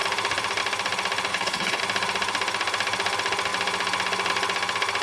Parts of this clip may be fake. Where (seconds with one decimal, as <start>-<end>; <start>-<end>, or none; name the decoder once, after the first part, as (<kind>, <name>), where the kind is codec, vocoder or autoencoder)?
1.3-1.8 (codec, HILCodec)